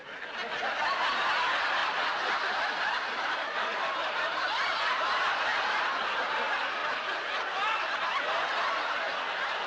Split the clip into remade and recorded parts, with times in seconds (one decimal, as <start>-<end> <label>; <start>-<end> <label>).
0.0-1.8 recorded; 1.8-4.8 remade; 4.8-5.5 recorded; 5.5-6.2 remade; 6.2-9.7 recorded